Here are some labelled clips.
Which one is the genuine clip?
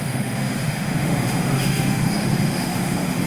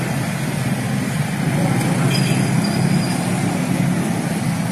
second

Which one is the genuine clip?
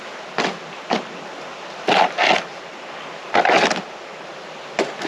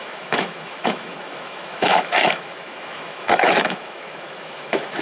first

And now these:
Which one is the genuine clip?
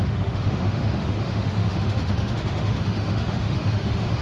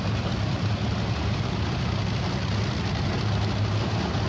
second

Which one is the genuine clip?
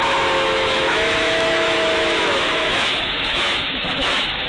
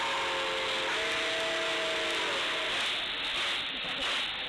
second